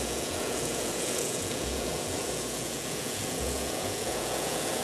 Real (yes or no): no